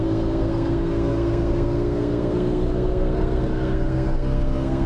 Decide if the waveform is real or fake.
fake